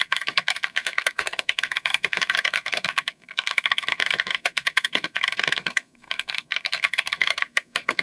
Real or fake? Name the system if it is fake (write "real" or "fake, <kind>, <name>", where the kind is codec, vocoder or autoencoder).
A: fake, codec, SNAC